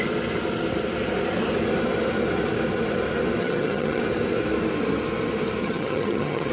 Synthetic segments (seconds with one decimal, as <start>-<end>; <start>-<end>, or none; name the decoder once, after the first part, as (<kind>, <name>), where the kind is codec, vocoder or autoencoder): 3.4-4.0 (vocoder, HiFi-GAN); 5.6-6.5